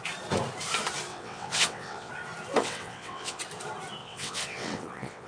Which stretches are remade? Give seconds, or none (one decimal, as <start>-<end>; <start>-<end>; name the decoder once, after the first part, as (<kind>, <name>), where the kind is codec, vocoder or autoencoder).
1.1-2.1 (vocoder, WaveNeXt); 2.6-3.4; 4.0-5.3